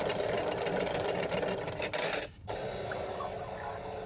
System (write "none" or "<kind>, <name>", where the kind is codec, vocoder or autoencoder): none